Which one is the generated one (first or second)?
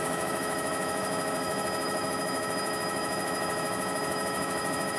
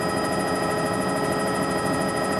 first